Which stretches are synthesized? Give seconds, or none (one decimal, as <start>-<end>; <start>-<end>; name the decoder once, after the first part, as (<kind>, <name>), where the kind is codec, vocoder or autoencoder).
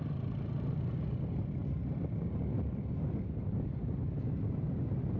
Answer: none